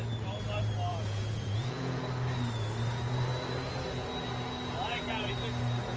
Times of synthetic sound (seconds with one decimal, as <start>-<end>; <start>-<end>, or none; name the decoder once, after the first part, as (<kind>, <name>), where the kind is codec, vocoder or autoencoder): 0.9-2.0 (vocoder, Vocos)